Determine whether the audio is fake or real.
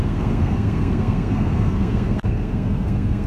fake